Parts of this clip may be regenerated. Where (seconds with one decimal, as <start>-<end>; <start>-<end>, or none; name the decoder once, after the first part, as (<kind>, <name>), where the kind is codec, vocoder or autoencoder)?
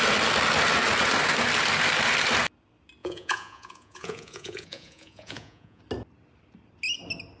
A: 3.0-5.8 (vocoder, Vocos)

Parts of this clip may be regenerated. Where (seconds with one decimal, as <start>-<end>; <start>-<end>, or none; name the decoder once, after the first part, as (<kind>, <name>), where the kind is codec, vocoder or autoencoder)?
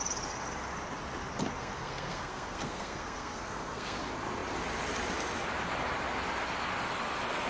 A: 1.6-4.0 (codec, SNAC)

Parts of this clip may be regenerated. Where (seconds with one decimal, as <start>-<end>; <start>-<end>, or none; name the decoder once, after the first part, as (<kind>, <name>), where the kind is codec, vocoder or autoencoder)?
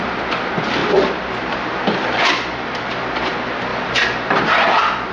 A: 0.8-3.2 (vocoder, BigVGAN v2); 3.7-4.5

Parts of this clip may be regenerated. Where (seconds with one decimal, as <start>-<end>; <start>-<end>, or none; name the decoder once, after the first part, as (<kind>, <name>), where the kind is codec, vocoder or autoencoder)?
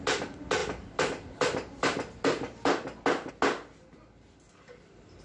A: none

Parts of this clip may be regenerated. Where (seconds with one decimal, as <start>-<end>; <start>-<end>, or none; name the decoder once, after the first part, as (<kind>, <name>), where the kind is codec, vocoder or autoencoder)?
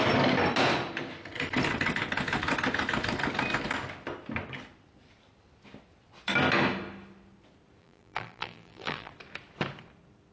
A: 7.8-9.1 (vocoder, BigVGAN v2)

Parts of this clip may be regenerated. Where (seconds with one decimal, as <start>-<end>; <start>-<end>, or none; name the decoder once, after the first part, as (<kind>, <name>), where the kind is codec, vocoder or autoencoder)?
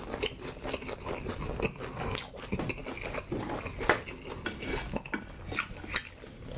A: none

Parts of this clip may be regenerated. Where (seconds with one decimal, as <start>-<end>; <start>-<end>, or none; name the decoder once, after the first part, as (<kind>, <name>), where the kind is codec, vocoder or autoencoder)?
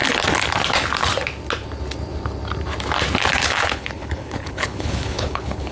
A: 3.4-5.7 (codec, HILCodec)